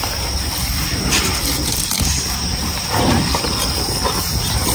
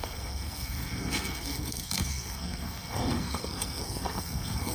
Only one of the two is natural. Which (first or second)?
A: first